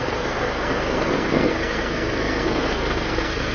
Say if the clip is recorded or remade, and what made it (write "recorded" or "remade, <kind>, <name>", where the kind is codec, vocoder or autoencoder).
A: remade, codec, SNAC